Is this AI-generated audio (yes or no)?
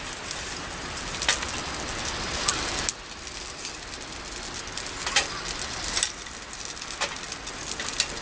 no